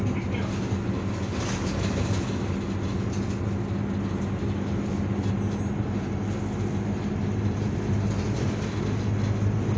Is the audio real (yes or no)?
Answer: yes